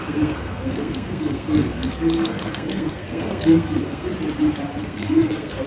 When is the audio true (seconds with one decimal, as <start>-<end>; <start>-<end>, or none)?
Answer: 4.1-4.8